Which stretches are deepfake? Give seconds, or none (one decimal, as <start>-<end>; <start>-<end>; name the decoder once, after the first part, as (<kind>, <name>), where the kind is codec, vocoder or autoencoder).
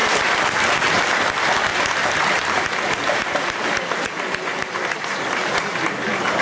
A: 0.0-1.0 (vocoder, BigVGAN v2); 1.7-5.5